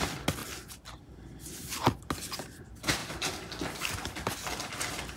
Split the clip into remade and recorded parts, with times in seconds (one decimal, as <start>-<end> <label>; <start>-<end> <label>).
0.0-5.2 recorded